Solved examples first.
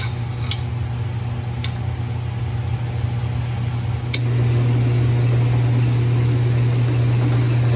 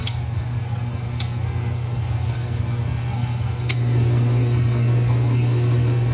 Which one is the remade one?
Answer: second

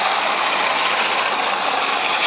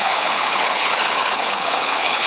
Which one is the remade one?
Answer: second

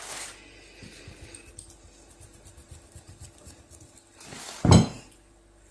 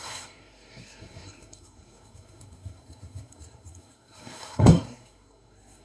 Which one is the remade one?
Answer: second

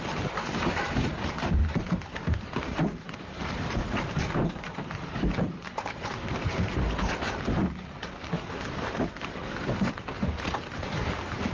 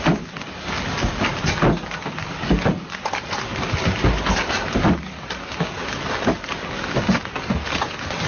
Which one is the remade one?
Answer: first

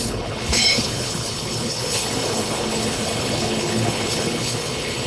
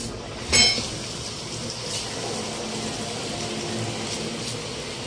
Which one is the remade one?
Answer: first